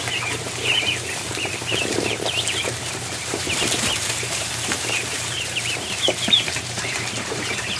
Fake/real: fake